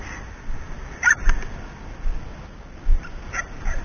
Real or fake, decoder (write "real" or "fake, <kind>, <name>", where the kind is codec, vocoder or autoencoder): real